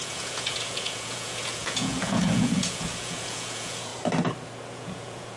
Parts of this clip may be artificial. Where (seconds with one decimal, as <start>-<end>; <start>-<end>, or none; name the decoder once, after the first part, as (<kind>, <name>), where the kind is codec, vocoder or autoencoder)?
0.0-3.9 (vocoder, Vocos); 4.7-5.4